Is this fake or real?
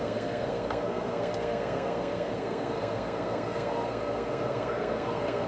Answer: fake